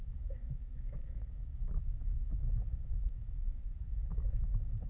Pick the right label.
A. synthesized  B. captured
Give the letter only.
A